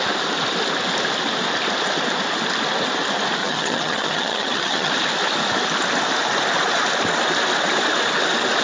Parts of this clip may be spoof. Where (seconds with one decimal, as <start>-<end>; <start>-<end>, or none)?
3.4-4.9